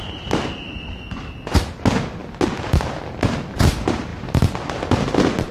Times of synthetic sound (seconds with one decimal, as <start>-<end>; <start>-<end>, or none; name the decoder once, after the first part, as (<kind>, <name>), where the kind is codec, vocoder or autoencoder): none